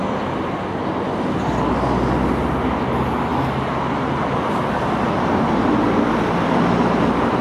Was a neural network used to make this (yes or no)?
no